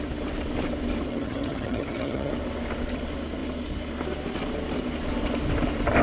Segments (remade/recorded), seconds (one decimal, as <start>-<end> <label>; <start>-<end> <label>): 0.0-1.1 recorded; 1.1-2.3 remade; 2.3-6.0 recorded